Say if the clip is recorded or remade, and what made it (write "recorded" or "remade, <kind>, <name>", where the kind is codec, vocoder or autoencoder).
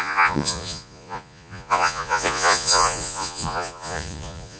remade, vocoder, Vocos